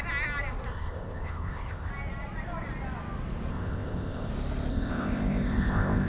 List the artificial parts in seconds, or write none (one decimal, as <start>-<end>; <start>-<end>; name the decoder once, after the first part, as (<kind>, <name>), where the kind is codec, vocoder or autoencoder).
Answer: 0.7-1.9 (codec, ZipCodec); 3.5-4.3; 4.7-6.1